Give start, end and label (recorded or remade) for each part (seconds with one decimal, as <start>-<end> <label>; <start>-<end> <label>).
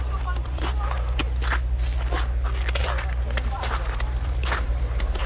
0.0-1.2 remade; 1.2-2.8 recorded; 2.8-5.3 remade